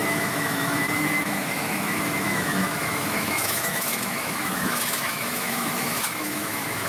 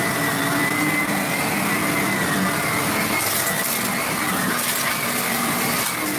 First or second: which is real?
second